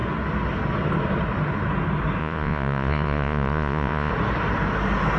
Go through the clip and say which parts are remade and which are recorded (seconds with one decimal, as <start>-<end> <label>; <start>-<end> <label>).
0.0-2.2 recorded; 2.2-4.1 remade; 4.1-5.2 recorded